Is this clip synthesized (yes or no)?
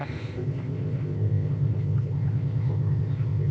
yes